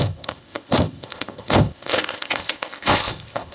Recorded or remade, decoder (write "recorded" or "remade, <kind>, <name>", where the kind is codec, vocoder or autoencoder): remade, codec, ZipCodec